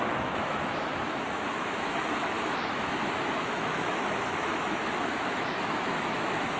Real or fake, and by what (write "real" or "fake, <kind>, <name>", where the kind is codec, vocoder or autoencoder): fake, autoencoder, DAC-VAE